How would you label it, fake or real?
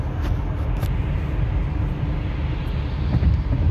real